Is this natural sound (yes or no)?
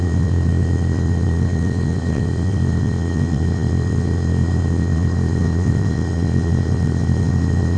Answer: no